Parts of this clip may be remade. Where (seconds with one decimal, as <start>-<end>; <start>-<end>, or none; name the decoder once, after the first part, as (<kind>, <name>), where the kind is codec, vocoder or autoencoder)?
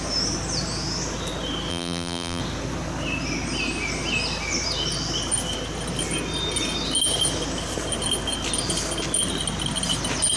1.7-2.4 (vocoder, BigVGAN v2)